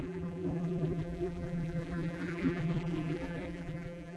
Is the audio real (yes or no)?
no